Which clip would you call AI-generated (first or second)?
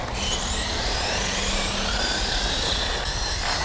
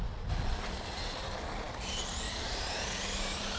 second